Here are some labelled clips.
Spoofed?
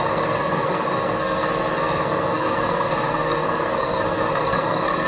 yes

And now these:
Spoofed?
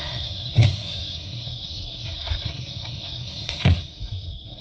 yes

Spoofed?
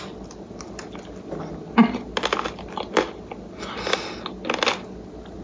no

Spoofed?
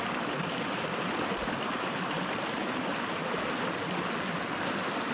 no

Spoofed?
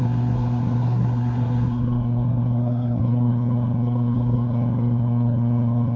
yes